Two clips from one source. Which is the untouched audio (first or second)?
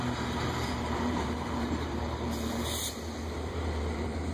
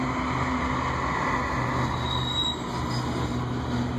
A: second